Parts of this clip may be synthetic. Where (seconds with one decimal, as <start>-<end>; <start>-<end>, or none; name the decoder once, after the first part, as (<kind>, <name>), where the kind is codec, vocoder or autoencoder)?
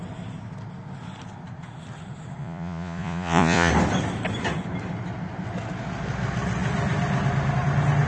2.4-3.7 (vocoder, Vocos)